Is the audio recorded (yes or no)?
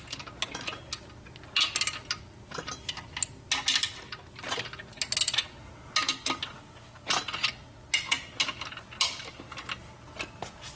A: yes